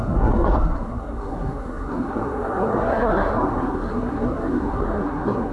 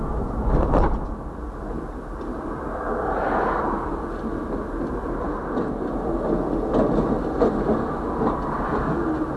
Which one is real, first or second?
second